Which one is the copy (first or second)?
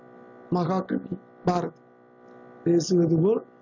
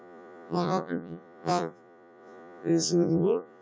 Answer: second